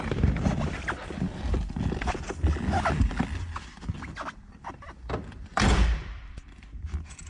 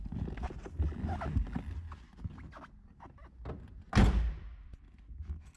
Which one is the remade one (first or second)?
first